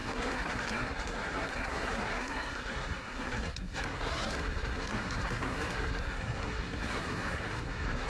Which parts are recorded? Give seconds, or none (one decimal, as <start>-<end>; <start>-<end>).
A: none